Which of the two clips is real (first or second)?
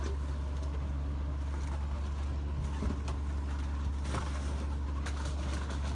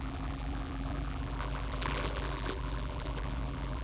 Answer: first